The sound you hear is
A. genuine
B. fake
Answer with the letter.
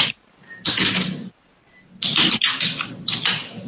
A